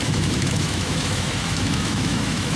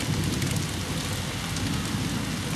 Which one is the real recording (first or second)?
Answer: second